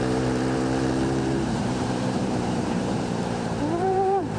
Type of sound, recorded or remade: remade